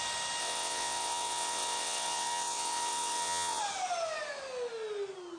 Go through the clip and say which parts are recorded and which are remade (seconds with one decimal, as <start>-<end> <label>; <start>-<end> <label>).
0.0-0.4 recorded; 0.4-3.6 remade; 3.6-5.4 recorded